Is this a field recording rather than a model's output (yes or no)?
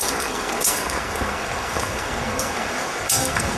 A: no